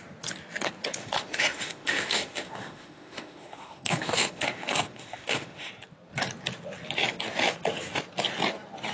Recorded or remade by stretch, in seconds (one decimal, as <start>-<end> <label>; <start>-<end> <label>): 0.0-1.0 recorded; 1.0-5.7 remade; 5.7-8.9 recorded